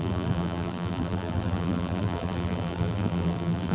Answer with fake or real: fake